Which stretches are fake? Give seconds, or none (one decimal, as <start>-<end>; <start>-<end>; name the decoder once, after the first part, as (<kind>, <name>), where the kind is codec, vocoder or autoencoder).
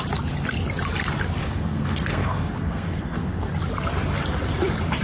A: 1.4-3.5 (codec, SNAC)